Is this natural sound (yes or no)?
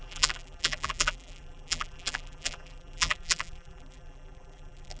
no